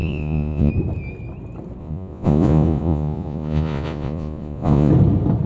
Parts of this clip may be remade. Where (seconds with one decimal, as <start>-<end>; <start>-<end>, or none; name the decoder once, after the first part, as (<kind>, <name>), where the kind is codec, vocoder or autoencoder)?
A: 0.0-0.7 (vocoder, Vocos); 1.8-4.9